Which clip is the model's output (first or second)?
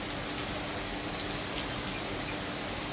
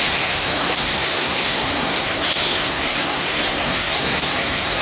second